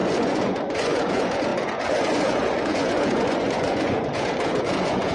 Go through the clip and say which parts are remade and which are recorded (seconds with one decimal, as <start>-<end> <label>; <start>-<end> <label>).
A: 0.0-5.1 remade

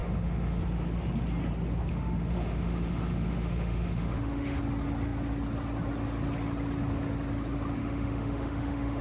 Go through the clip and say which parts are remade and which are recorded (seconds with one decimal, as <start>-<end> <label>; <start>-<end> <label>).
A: 0.0-0.6 remade; 0.6-1.9 recorded; 1.9-4.6 remade; 4.6-7.8 recorded; 7.8-9.0 remade

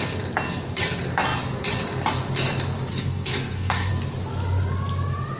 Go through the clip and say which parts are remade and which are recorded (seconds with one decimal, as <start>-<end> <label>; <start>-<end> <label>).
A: 0.0-2.9 recorded; 2.9-3.9 remade; 3.9-5.4 recorded

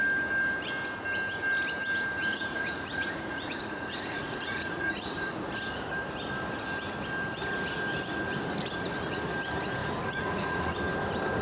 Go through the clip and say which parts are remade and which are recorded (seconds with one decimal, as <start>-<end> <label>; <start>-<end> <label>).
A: 0.0-2.2 recorded; 2.2-5.5 remade; 5.5-9.8 recorded; 9.8-10.7 remade; 10.7-11.4 recorded

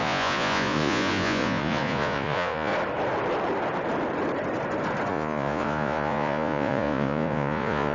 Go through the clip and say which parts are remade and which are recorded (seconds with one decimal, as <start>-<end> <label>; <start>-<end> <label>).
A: 0.0-2.7 remade; 2.7-5.1 recorded; 5.1-7.9 remade

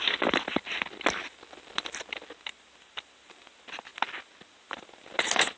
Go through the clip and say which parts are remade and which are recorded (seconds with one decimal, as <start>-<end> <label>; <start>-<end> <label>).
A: 0.0-5.6 recorded